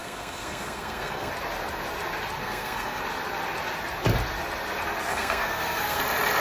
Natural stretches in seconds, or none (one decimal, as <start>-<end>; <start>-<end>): 1.3-2.4; 3.0-5.1; 6.0-6.4